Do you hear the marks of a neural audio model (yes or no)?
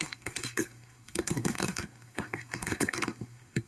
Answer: yes